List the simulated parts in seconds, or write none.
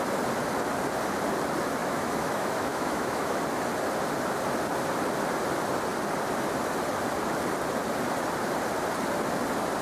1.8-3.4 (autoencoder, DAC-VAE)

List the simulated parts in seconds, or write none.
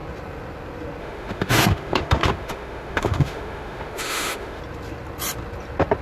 1.0-4.6 (autoencoder, DAC-VAE)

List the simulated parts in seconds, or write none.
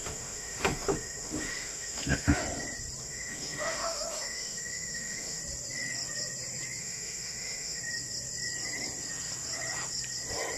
0.0-2.4 (autoencoder, DAC-VAE); 3.0-5.4; 6.8-7.8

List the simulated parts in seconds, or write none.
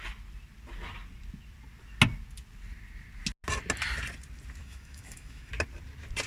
4.6-5.5 (autoencoder, DAC-VAE)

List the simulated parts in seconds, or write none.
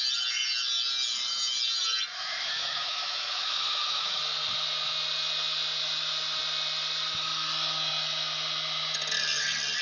2.1-4.2 (autoencoder, DAC-VAE)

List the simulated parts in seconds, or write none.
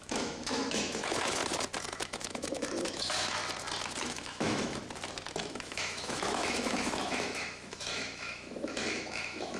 0.0-1.4 (autoencoder, DAC-VAE); 1.9-3.4; 4.0-4.8; 5.4-9.6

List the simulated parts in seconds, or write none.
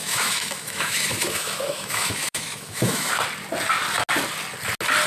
0.0-3.1 (autoencoder, DAC-VAE)